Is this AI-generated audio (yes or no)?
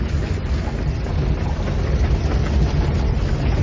no